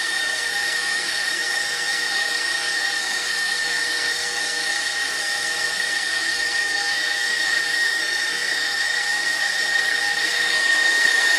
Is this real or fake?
fake